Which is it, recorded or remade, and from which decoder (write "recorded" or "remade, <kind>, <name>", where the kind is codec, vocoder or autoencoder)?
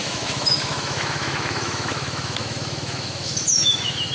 remade, autoencoder, DAC-VAE